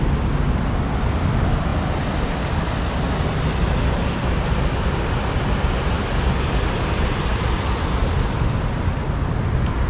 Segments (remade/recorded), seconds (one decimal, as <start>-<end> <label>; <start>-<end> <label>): 0.0-9.9 recorded